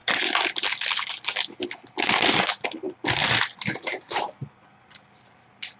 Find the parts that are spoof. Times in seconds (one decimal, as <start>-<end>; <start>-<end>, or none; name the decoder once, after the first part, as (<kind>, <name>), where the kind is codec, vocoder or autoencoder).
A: none